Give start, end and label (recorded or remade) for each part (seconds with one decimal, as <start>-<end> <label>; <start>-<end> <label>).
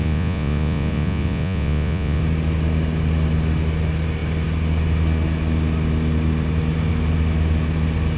0.0-2.2 remade; 2.2-8.2 recorded